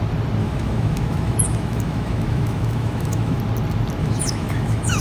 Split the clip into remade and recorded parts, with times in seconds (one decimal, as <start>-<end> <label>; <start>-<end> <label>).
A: 0.0-0.4 recorded; 0.4-3.4 remade; 3.4-4.0 recorded; 4.0-5.0 remade